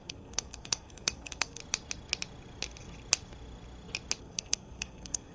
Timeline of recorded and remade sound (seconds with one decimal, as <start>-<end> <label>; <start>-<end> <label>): 0.0-1.6 remade; 1.6-4.2 recorded; 4.2-5.3 remade